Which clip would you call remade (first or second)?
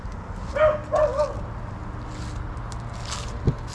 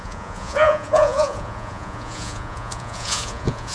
second